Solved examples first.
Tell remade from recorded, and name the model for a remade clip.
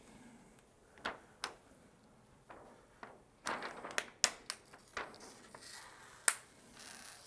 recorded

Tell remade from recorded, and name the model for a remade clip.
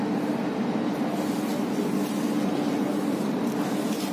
recorded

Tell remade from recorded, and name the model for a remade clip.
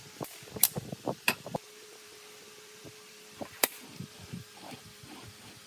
remade, vocoder, BigVGAN v2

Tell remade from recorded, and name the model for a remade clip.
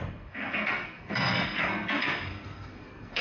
remade, codec, SNAC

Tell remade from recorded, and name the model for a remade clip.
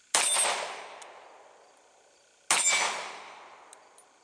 recorded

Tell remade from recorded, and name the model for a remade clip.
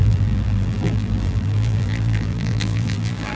remade, vocoder, BigVGAN v2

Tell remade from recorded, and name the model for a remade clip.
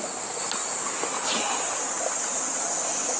recorded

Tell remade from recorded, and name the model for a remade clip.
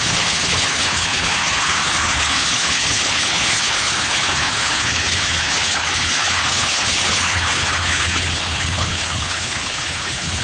remade, codec, HILCodec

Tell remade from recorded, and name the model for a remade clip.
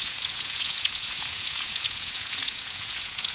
remade, vocoder, Vocos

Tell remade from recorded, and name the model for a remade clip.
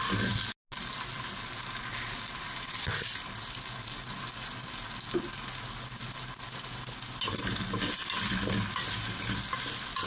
recorded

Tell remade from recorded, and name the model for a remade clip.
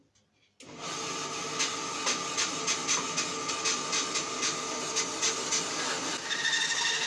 recorded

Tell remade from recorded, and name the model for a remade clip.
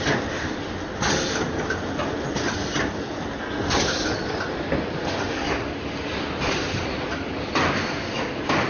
recorded